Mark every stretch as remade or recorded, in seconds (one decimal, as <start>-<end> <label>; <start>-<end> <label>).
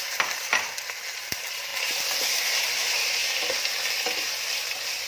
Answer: 0.0-3.2 remade; 3.2-5.1 recorded